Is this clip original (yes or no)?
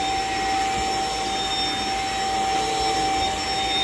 yes